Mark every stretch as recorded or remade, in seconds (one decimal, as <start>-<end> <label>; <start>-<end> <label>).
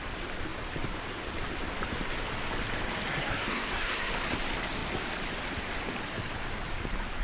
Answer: 0.0-3.1 recorded; 3.1-4.1 remade; 4.1-7.2 recorded